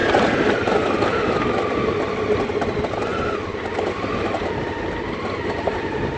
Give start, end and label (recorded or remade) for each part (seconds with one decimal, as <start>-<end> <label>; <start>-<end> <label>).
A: 0.0-6.2 recorded